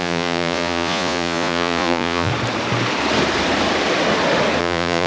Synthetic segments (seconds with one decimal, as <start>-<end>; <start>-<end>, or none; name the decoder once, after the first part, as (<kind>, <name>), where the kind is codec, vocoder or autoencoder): 0.0-2.3 (vocoder, Vocos); 4.6-5.1